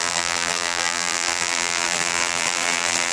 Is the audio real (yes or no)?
no